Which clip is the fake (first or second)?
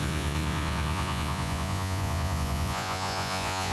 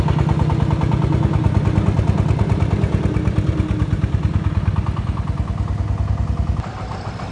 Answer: first